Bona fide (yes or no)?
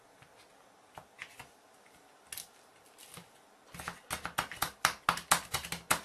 yes